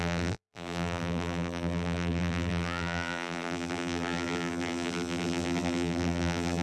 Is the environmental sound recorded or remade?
remade